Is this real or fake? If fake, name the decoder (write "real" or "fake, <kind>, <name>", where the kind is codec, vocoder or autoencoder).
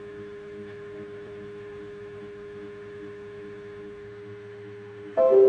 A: fake, autoencoder, DAC-VAE